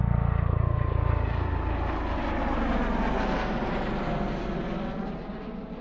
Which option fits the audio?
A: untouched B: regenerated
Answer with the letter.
A